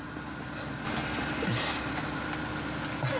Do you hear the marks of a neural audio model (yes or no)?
no